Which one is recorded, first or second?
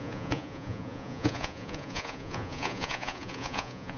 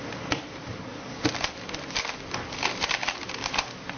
second